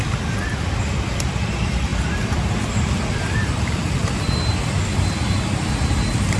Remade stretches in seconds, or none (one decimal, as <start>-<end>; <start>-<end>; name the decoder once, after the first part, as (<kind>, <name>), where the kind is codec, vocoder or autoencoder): 0.0-6.4 (vocoder, BigVGAN v2)